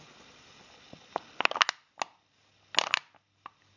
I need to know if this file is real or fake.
real